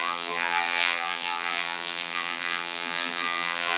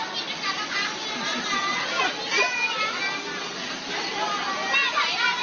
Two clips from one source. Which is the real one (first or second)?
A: second